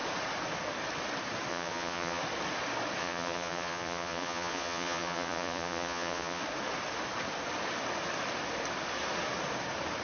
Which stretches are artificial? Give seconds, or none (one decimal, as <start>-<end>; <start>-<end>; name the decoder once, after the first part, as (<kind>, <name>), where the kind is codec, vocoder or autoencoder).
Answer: 1.5-2.2 (vocoder, Vocos); 3.0-6.4